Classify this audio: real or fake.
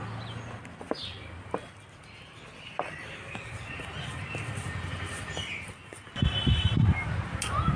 real